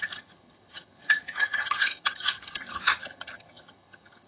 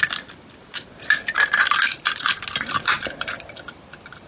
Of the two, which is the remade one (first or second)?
first